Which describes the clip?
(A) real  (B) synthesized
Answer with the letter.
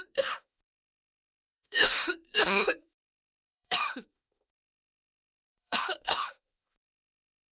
B